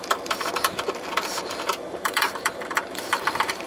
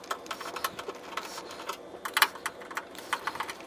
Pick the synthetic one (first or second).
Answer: first